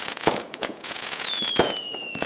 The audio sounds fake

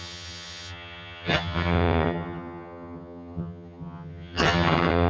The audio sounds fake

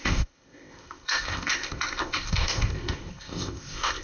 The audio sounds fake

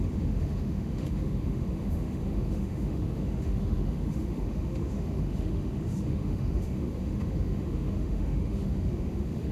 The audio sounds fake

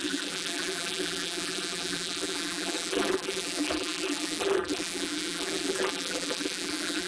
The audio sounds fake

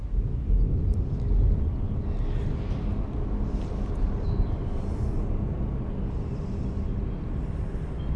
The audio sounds real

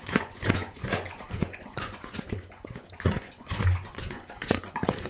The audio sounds fake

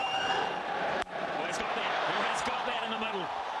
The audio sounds fake